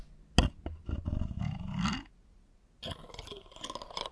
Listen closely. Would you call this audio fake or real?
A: real